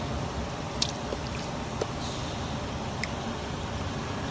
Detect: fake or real fake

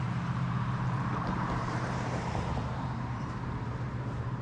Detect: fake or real fake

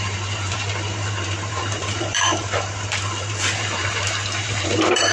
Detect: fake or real fake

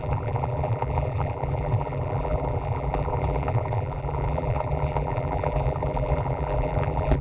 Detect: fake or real fake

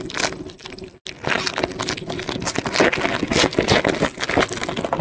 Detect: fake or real real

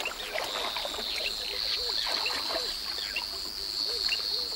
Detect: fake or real real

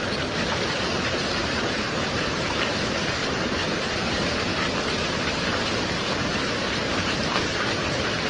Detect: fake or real fake